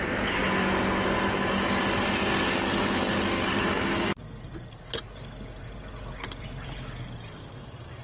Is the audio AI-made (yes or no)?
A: no